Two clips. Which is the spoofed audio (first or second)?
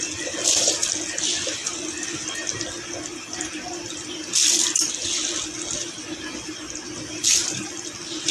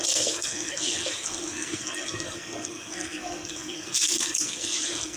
second